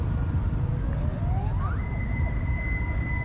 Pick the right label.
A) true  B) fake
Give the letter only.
A